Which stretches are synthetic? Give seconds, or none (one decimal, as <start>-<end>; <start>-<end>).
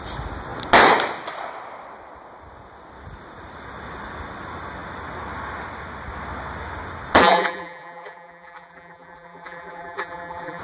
7.2-10.6